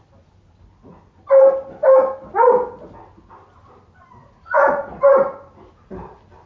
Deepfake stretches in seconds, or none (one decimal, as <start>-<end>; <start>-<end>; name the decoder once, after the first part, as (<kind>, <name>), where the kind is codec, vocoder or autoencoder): 4.2-4.9 (vocoder, Vocos)